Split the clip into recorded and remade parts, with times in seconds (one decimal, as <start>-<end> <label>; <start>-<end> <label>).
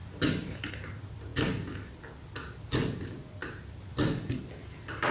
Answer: 0.0-1.3 remade; 1.3-2.6 recorded; 2.6-5.1 remade